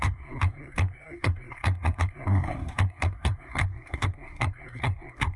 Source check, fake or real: fake